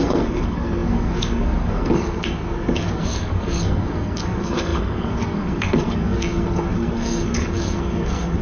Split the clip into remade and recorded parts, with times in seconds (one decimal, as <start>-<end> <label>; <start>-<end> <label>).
0.0-8.4 remade